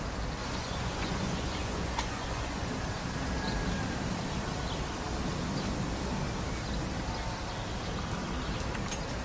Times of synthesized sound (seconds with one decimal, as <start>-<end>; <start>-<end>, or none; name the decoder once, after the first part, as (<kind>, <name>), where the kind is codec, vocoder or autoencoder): 0.4-2.7 (vocoder, Vocos)